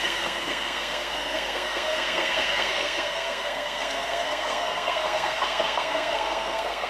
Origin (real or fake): fake